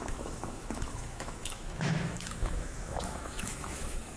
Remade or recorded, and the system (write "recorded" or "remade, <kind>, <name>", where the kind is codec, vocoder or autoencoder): remade, autoencoder, DAC-VAE